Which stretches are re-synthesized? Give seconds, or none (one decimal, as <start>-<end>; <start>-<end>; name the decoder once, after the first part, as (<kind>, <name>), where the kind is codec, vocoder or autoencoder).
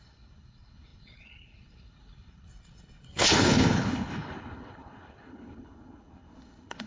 0.0-6.9 (codec, HILCodec)